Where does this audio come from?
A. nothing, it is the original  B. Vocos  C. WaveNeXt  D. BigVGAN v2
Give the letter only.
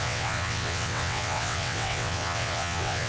C